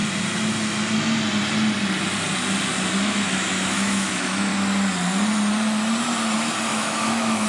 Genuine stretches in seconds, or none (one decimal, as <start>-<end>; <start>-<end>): 0.0-3.0; 4.5-6.6